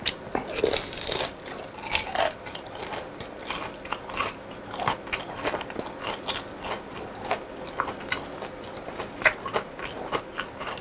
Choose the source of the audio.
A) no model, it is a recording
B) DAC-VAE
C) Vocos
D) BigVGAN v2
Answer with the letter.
A